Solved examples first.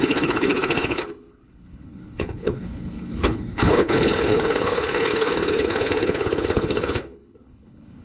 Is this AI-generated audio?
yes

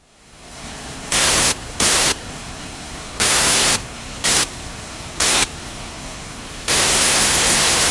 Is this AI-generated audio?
yes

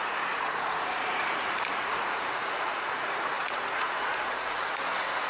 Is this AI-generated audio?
yes